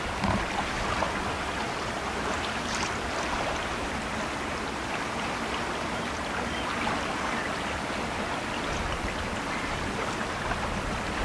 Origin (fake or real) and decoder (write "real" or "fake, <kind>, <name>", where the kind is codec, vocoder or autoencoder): real